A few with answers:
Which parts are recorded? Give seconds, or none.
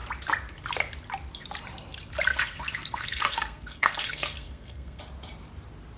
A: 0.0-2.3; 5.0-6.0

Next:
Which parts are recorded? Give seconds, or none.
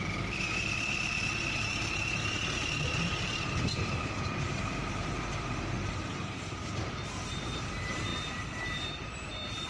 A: none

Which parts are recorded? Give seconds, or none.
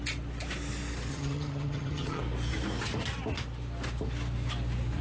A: 0.0-1.1; 2.2-5.0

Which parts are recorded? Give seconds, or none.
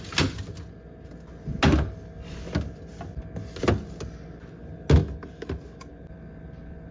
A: 0.0-6.9